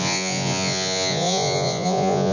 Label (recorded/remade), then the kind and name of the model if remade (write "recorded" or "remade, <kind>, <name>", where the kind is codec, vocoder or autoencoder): remade, vocoder, Vocos